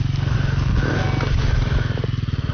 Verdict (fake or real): real